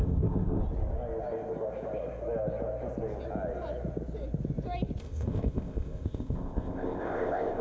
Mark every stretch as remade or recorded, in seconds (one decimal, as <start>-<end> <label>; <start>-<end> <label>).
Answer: 0.0-0.6 remade; 0.6-5.0 recorded; 5.0-7.6 remade